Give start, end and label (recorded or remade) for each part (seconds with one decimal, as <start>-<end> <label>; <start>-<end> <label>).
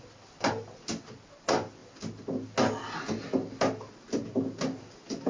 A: 0.0-5.3 recorded